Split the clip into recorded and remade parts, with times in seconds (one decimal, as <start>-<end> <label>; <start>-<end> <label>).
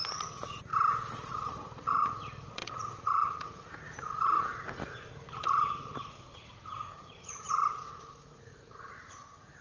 0.0-0.7 remade; 0.7-1.3 recorded; 1.3-9.6 remade